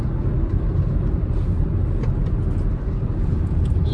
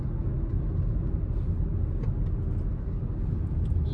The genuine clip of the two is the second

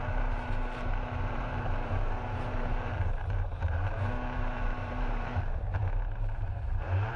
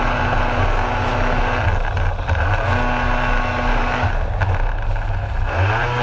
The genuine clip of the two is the second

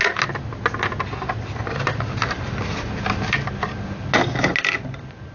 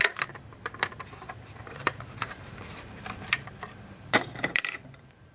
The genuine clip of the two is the first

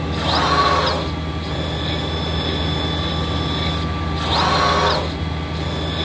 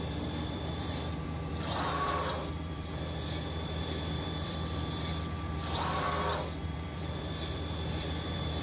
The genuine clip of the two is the first